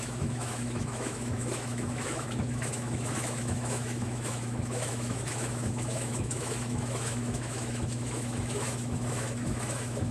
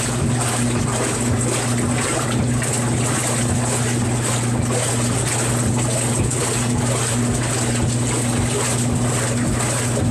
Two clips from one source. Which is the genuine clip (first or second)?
second